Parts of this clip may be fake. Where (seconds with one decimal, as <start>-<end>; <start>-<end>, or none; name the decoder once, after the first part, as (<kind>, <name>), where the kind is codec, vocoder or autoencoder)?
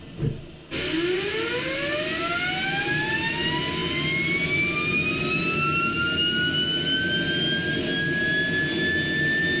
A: none